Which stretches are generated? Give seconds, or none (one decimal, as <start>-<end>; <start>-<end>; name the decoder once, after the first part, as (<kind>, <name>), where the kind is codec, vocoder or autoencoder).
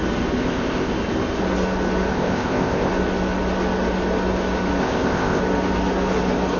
0.4-0.9 (codec, ZipCodec); 2.1-2.9; 4.8-5.4